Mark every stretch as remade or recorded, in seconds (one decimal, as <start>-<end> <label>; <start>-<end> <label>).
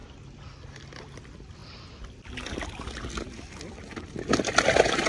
0.0-5.1 recorded